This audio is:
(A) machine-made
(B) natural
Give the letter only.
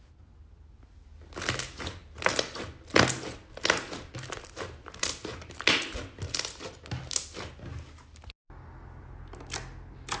B